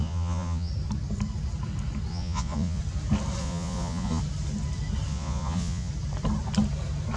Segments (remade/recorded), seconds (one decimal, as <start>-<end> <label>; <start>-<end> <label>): 0.0-0.7 remade; 0.7-2.1 recorded; 2.1-2.8 remade; 2.8-3.4 recorded; 3.4-4.2 remade; 4.2-5.1 recorded; 5.1-5.9 remade; 5.9-7.2 recorded